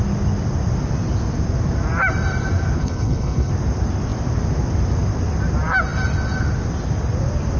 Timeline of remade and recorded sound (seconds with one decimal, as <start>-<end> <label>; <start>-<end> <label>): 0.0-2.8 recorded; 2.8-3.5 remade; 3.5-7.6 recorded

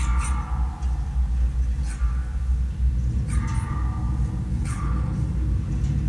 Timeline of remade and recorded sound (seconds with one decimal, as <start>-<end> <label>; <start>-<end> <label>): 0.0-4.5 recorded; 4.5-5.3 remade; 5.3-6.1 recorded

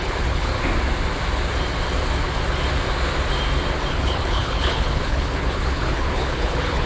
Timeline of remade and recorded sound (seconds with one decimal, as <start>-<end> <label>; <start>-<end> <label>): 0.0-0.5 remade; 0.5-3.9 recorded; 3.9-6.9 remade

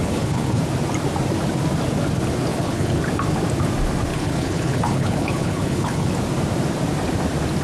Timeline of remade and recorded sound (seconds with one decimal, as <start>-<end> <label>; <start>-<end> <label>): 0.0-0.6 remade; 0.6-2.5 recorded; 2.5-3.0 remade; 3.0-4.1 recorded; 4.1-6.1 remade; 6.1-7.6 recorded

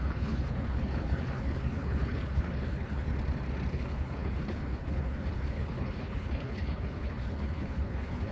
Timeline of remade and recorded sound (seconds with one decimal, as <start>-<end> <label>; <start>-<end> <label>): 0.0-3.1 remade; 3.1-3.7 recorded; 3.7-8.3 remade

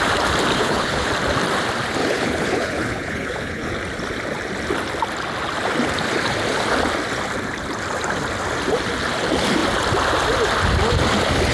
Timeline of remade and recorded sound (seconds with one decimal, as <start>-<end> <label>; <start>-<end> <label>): 0.0-0.5 recorded; 0.5-1.1 remade; 1.1-2.0 recorded; 2.0-3.7 remade; 3.7-11.5 recorded